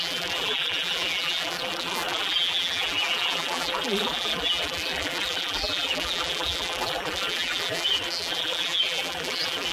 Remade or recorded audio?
remade